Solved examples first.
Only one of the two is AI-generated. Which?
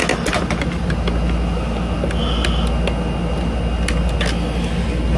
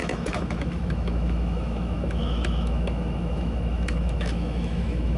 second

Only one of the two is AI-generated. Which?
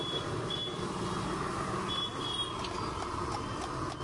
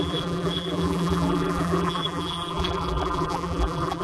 second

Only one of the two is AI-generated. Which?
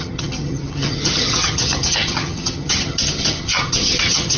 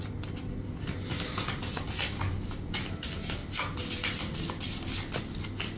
first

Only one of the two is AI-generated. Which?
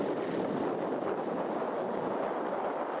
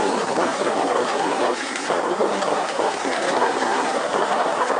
second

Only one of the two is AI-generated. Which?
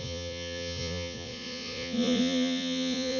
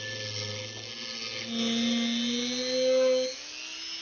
first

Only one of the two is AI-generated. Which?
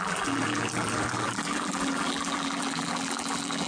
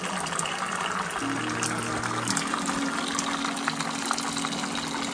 first